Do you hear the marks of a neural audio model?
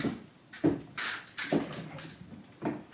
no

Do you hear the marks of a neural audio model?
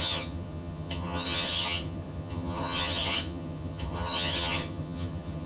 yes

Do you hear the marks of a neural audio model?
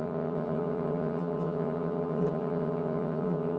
yes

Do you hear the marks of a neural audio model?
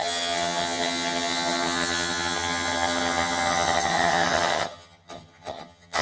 yes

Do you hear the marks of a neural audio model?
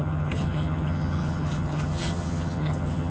yes